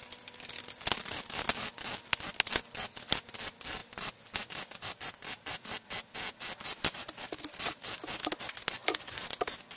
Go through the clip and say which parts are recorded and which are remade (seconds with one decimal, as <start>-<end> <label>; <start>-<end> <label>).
0.0-9.8 recorded